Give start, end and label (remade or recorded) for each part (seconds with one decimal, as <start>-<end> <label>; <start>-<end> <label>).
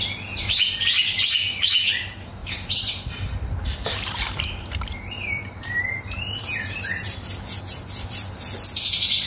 0.0-2.4 recorded; 2.4-7.6 remade; 7.6-9.3 recorded